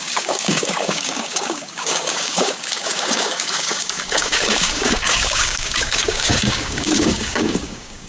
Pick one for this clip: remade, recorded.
remade